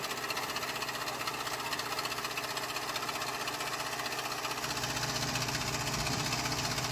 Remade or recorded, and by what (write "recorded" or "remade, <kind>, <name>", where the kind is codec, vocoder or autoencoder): recorded